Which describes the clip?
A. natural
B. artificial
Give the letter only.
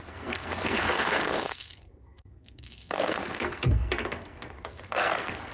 B